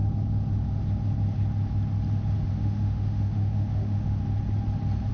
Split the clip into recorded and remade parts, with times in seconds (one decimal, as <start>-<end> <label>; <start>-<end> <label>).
0.0-2.5 recorded; 2.5-4.2 remade; 4.2-5.1 recorded

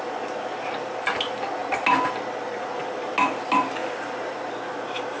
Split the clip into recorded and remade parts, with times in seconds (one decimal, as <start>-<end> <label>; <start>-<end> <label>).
0.0-5.2 recorded